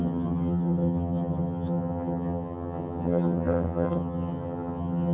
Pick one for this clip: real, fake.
fake